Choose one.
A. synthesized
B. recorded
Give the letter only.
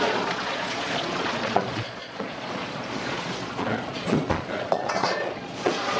A